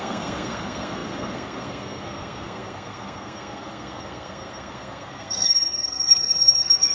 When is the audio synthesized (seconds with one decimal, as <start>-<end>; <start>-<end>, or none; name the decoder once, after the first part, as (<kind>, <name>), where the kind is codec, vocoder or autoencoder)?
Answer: 0.0-6.9 (codec, SNAC)

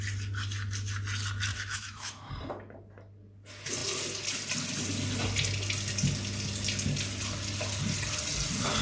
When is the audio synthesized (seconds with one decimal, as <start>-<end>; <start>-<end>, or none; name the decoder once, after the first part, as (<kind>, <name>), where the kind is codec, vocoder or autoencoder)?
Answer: 1.5-2.3 (autoencoder, DAC-VAE)

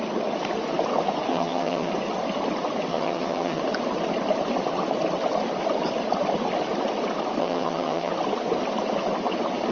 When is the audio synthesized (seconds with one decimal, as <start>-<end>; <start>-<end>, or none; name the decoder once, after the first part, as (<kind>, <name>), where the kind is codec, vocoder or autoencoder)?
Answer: 1.3-1.9 (vocoder, HiFi-GAN); 2.9-3.6; 7.4-8.1

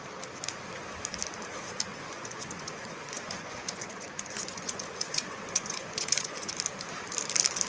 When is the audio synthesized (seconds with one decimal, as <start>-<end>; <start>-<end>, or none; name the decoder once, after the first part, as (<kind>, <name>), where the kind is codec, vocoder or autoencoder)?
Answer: 1.9-6.5 (vocoder, Vocos)

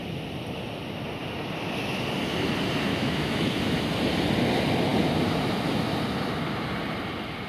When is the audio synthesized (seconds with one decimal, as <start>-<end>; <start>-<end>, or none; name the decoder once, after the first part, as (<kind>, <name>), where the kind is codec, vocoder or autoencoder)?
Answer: 2.9-3.8 (autoencoder, DAC-VAE)

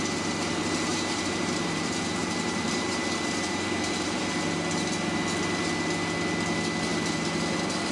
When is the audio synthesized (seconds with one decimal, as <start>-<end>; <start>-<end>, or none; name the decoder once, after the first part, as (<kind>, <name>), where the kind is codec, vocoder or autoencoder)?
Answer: 0.9-4.2 (vocoder, BigVGAN v2); 6.9-7.4

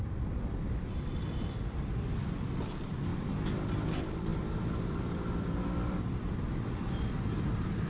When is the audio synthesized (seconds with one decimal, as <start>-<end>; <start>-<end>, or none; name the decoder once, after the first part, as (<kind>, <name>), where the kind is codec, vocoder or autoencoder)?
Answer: 0.0-3.1 (vocoder, BigVGAN v2); 3.7-4.3; 4.8-7.9

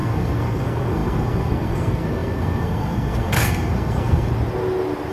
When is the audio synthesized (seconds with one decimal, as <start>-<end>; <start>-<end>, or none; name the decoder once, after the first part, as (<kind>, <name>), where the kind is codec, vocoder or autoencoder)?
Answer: 0.0-4.3 (codec, SNAC)